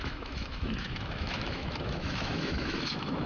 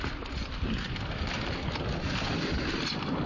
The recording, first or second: second